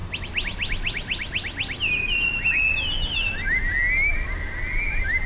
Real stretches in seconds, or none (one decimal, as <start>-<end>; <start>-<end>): 0.0-5.3